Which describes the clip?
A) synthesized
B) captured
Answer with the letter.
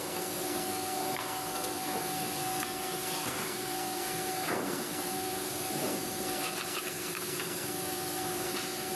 A